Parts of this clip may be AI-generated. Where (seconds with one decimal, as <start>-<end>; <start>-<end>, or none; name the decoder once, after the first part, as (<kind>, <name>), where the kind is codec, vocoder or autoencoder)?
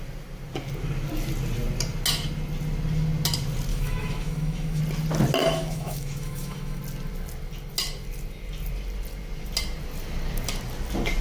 3.7-4.8 (autoencoder, DAC-VAE); 5.4-6.8